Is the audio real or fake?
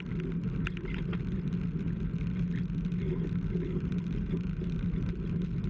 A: real